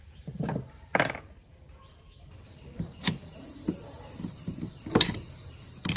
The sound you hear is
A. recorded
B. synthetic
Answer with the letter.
B